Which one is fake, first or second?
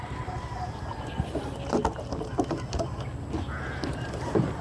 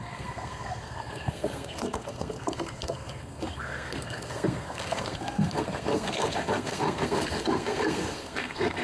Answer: second